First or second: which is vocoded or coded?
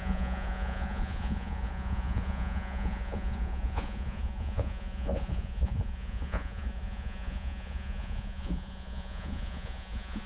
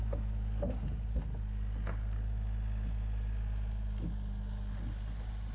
first